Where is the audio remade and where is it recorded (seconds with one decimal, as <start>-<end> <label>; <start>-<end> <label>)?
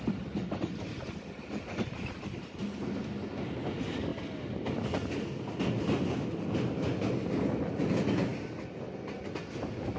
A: 0.0-10.0 recorded